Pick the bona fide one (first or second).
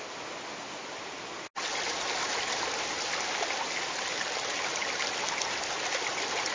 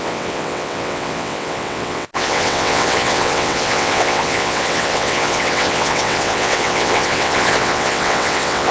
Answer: first